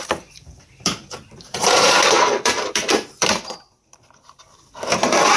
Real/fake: fake